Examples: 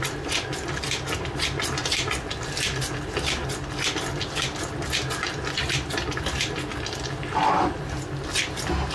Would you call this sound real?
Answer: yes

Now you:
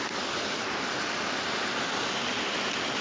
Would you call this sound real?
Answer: yes